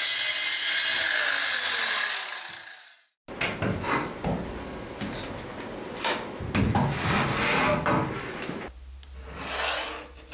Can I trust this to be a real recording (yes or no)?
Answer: yes